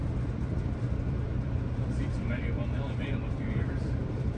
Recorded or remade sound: remade